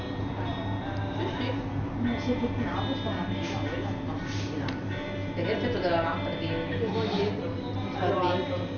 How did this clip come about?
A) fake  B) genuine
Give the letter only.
A